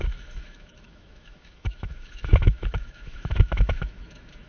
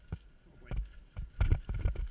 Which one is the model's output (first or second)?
first